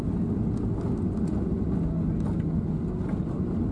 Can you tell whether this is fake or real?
real